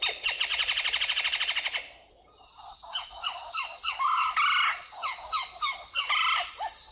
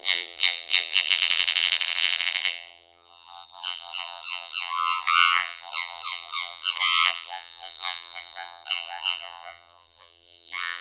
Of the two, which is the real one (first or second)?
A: first